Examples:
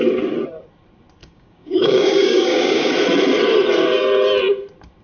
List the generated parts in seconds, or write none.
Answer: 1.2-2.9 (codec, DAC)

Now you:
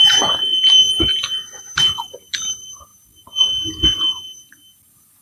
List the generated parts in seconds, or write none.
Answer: none

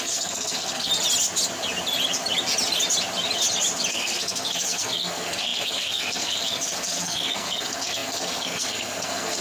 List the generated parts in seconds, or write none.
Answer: 0.0-0.9 (codec, SNAC); 3.9-9.4